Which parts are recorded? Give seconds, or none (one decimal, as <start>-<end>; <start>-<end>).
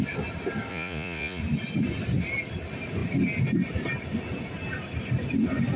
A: 0.0-0.7; 1.4-5.8